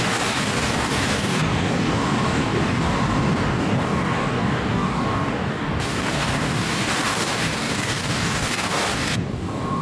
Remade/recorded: remade